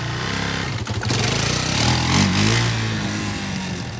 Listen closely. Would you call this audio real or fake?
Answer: real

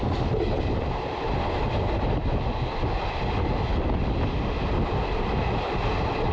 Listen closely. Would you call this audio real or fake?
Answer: real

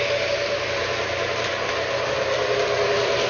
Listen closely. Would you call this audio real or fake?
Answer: real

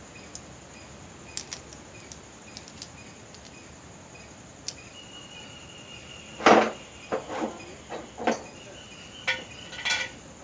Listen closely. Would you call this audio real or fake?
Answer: real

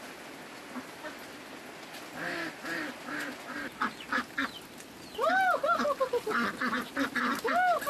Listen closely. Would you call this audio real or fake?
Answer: real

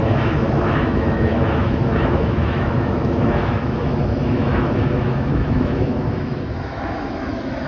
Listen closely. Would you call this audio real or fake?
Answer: fake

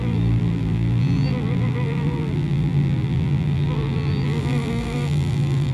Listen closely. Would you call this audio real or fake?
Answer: fake